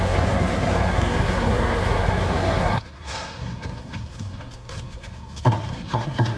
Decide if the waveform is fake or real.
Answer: fake